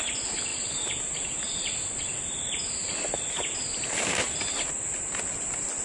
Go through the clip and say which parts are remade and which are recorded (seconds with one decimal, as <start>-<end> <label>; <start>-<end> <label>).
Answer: 0.0-5.8 recorded